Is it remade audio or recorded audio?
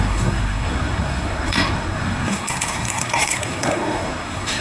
remade